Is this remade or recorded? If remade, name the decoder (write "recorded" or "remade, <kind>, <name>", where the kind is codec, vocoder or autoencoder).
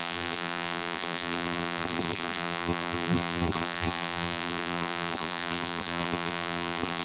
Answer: remade, vocoder, BigVGAN v2